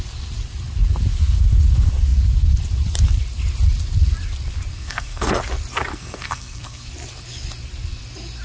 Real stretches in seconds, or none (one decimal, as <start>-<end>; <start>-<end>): 0.0-4.7; 5.4-5.9; 6.9-8.4